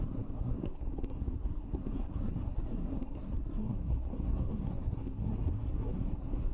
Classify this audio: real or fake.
fake